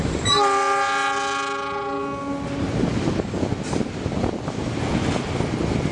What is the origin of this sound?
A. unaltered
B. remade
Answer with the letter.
A